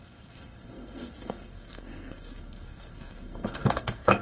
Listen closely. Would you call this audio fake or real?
fake